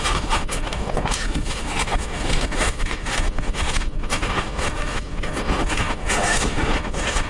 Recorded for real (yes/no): no